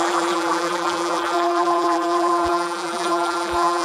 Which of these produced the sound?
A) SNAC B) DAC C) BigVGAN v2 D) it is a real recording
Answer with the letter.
C